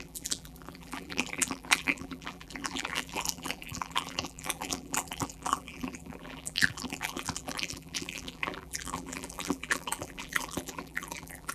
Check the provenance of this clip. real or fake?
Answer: fake